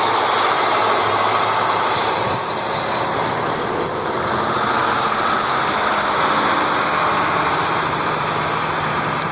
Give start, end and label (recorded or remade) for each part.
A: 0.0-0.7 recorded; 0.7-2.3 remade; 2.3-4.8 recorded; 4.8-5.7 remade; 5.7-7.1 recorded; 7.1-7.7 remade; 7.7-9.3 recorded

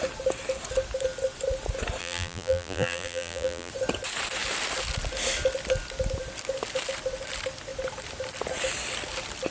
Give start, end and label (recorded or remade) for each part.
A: 0.0-2.0 recorded; 2.0-3.7 remade; 3.7-9.5 recorded

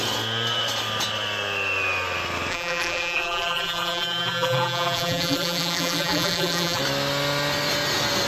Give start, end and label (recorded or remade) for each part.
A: 0.0-2.5 recorded; 2.5-6.8 remade; 6.8-8.3 recorded

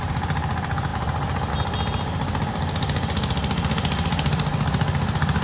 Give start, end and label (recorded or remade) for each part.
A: 0.0-5.4 recorded